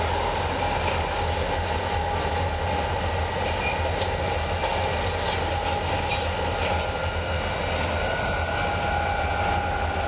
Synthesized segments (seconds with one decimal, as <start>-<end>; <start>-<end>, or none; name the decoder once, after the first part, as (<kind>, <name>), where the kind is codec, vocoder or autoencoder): none